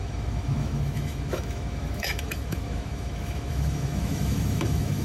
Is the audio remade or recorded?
remade